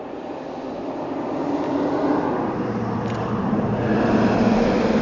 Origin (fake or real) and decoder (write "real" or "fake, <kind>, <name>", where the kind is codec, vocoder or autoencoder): real